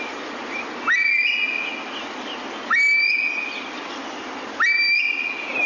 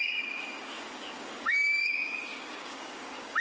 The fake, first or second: second